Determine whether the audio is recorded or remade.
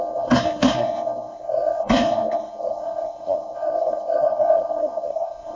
remade